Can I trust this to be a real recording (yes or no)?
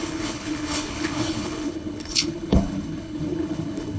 no